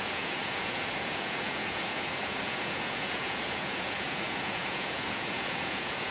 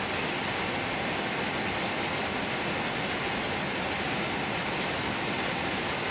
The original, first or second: second